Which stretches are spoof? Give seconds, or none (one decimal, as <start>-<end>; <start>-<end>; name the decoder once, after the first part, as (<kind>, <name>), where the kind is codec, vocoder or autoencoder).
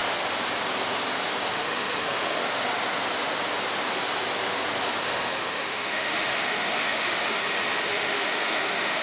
1.5-2.4 (autoencoder, DAC-VAE); 5.0-7.4; 7.9-9.0